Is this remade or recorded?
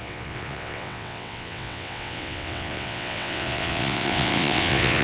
remade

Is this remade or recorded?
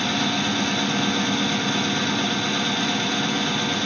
recorded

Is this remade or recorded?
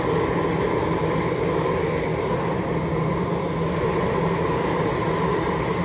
recorded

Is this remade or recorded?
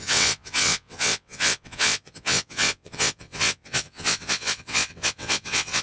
remade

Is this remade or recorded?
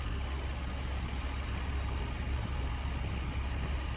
recorded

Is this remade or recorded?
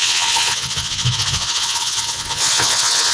remade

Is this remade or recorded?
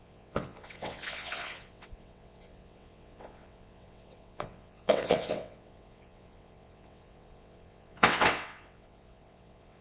remade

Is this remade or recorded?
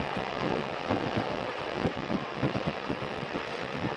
remade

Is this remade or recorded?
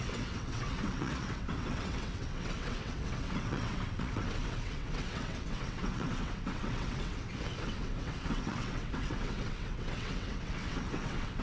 remade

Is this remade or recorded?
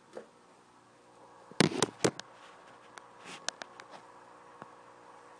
recorded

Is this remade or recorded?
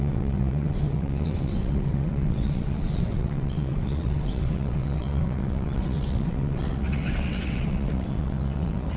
remade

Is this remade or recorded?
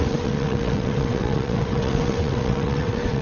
remade